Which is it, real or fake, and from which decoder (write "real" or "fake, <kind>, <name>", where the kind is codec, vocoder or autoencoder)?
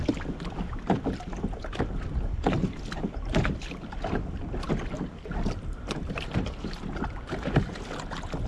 real